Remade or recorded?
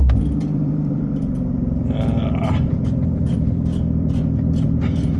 remade